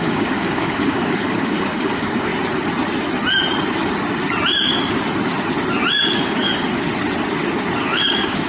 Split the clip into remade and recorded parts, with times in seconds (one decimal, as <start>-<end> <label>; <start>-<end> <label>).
0.0-2.3 remade; 2.3-5.9 recorded; 5.9-6.5 remade; 6.5-7.8 recorded; 7.8-8.5 remade